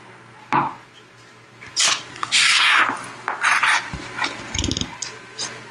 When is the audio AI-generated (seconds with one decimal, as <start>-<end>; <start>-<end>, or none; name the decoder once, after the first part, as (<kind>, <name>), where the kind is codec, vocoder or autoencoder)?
2.1-2.8 (codec, SNAC)